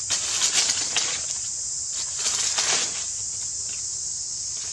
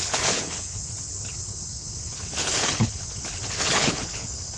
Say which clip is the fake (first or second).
second